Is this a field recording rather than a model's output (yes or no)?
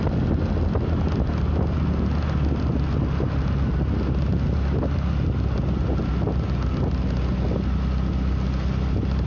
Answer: yes